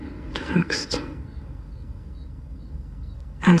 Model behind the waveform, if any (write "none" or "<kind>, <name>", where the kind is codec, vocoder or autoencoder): codec, SNAC